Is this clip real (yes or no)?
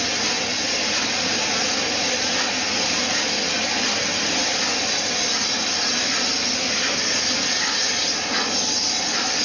yes